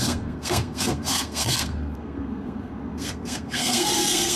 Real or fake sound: fake